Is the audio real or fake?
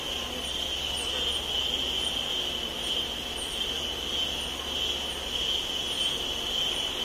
real